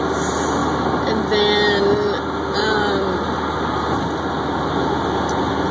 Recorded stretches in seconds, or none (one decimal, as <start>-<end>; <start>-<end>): 0.0-5.7